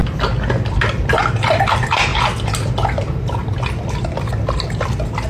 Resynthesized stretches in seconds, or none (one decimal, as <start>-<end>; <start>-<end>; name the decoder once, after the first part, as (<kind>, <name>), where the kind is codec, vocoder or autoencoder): none